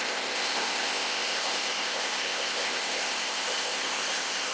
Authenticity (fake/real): fake